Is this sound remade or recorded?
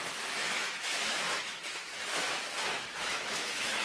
remade